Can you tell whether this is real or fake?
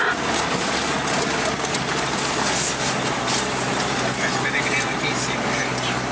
real